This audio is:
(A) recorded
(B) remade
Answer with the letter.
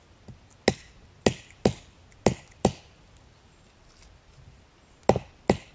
A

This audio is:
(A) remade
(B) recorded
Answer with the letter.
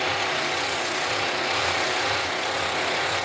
A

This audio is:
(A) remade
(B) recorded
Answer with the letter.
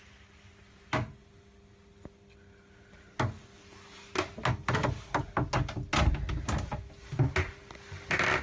B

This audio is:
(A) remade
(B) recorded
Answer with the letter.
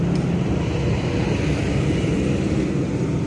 B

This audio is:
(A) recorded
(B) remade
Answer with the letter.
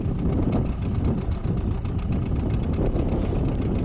A